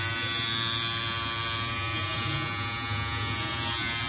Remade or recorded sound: recorded